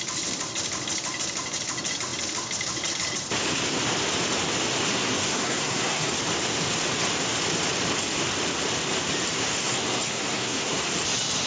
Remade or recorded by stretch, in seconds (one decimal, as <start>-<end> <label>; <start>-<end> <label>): 0.0-4.9 recorded; 4.9-6.1 remade; 6.1-9.5 recorded; 9.5-10.8 remade; 10.8-11.5 recorded